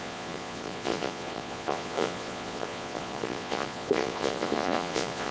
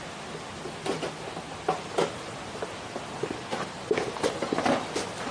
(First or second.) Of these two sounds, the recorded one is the second